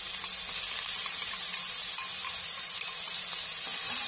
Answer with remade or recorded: remade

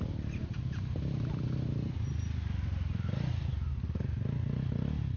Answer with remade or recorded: recorded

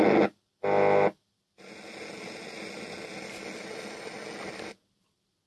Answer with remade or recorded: recorded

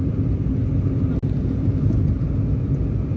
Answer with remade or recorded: recorded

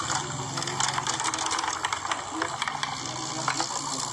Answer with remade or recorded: recorded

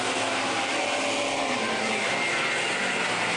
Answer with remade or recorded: recorded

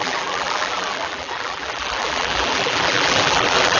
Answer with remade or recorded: remade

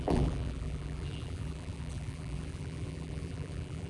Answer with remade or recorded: remade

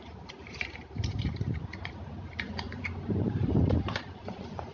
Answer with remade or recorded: remade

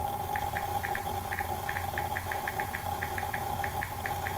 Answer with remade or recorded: recorded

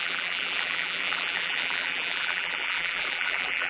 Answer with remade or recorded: remade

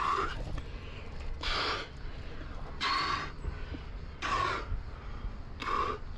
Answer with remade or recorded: recorded